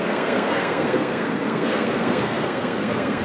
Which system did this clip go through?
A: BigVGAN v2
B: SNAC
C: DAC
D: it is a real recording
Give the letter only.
B